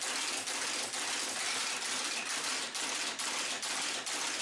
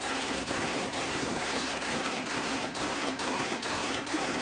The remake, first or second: second